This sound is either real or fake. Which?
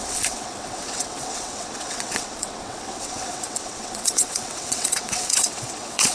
fake